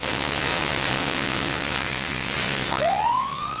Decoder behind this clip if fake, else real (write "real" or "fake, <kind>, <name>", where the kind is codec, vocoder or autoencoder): fake, vocoder, WaveNeXt